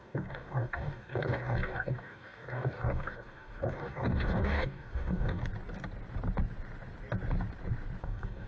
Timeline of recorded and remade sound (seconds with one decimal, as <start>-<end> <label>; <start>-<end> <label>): 0.0-5.4 remade; 5.4-8.0 recorded; 8.0-8.5 remade